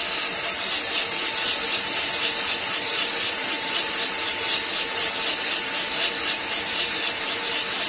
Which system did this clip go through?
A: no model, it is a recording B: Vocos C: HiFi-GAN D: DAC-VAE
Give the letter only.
A